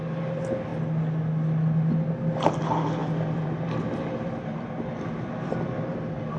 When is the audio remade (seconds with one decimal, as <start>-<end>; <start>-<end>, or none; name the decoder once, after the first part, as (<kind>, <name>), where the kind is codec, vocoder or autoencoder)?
0.0-0.7 (vocoder, BigVGAN v2); 2.6-6.4